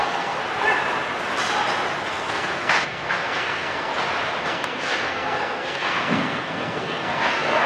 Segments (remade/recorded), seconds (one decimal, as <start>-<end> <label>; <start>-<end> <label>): 0.0-0.4 remade; 0.4-2.1 recorded; 2.1-3.9 remade; 3.9-4.4 recorded; 4.4-7.7 remade